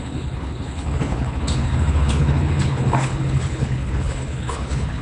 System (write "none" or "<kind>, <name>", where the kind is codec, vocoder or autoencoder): codec, HILCodec